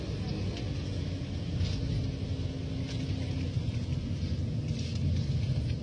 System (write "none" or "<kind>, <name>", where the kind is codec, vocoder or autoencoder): none